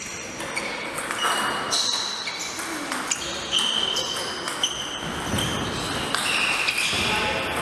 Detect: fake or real real